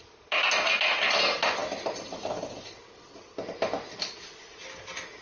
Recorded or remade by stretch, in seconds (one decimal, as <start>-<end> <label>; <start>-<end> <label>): 0.0-5.2 recorded